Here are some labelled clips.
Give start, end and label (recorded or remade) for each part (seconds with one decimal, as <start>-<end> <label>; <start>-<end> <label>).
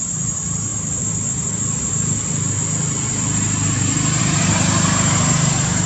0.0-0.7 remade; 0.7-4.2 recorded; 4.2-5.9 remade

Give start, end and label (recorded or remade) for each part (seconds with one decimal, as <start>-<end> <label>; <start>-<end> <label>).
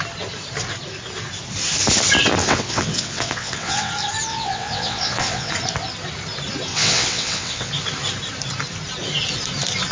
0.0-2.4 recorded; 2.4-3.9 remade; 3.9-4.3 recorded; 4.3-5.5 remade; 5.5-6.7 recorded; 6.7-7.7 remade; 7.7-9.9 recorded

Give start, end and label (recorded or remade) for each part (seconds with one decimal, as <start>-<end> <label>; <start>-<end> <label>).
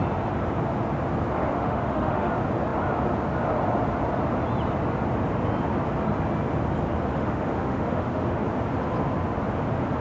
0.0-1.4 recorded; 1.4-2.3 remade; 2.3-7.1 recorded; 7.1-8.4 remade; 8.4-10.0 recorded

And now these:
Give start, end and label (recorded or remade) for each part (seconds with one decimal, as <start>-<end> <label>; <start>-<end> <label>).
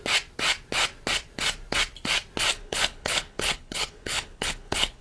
0.0-2.5 recorded; 2.5-5.0 remade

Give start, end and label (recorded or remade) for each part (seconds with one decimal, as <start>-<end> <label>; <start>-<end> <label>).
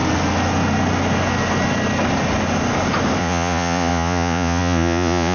0.0-3.2 recorded; 3.2-5.3 remade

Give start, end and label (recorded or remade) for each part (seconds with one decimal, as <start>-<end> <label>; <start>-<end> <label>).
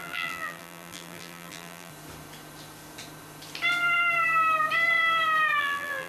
0.0-1.9 remade; 1.9-5.6 recorded; 5.6-6.1 remade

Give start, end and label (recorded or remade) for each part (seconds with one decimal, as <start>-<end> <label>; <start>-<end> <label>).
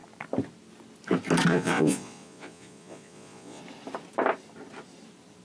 0.0-1.5 recorded; 1.5-3.6 remade; 3.6-5.4 recorded